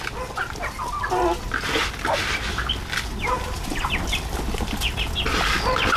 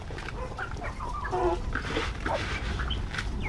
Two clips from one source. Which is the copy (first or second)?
second